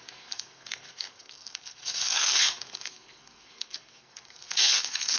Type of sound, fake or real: fake